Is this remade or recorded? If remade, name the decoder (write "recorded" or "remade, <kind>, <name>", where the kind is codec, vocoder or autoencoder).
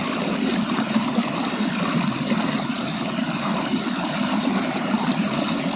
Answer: recorded